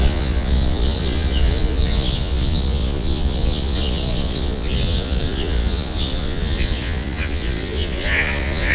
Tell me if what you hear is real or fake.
fake